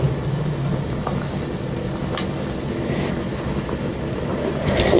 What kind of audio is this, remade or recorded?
recorded